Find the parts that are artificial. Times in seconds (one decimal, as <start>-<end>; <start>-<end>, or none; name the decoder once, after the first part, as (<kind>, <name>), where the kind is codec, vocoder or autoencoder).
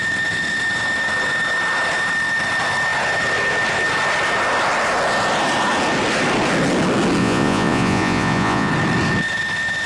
7.2-8.7 (vocoder, Vocos)